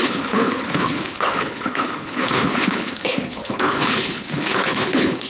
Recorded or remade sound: remade